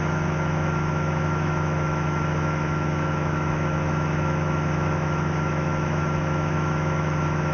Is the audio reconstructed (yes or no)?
yes